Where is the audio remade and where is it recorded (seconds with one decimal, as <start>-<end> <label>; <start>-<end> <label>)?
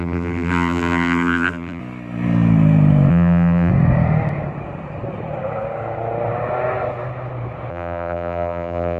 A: 0.0-1.8 remade; 1.8-3.1 recorded; 3.1-3.7 remade; 3.7-7.7 recorded; 7.7-9.0 remade